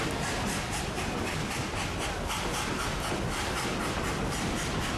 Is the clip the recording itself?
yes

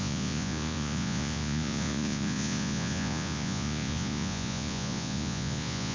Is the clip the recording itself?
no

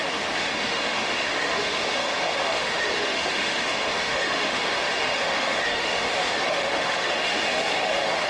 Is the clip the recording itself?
no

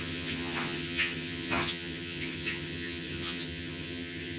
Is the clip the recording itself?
no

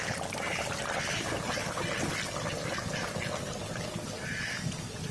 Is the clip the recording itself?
yes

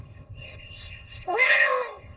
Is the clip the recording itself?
no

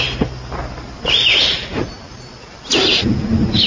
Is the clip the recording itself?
yes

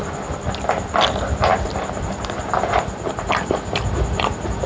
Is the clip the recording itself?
yes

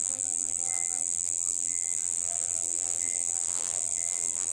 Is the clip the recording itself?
no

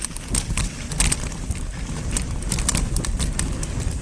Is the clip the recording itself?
yes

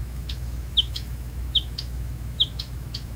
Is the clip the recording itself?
no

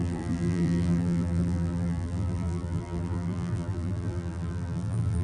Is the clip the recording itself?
no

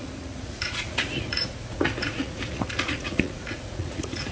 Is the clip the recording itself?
no